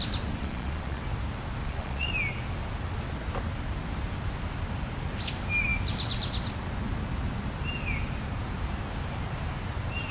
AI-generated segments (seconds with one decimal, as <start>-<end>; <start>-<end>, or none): 0.4-1.0; 1.6-2.1